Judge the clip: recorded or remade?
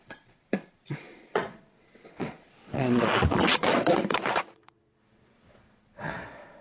remade